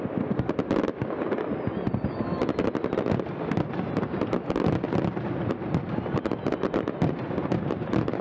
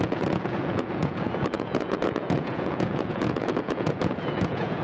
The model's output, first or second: second